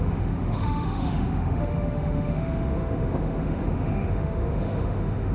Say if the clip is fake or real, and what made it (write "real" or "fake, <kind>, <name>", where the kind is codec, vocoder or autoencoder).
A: fake, autoencoder, DAC-VAE